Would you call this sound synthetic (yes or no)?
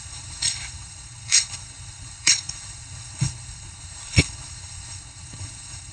yes